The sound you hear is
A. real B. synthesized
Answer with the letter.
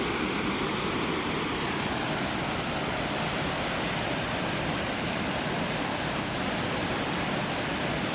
A